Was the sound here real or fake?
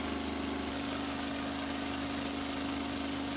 real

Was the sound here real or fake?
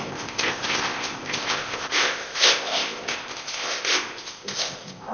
fake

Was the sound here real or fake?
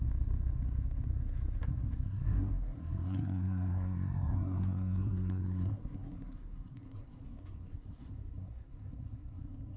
fake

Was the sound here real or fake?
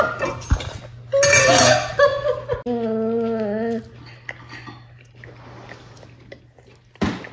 real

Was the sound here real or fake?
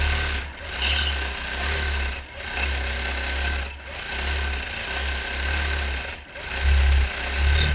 real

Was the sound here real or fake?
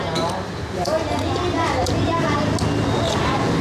real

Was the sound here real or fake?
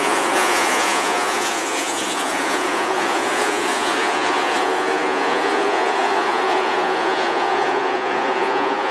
fake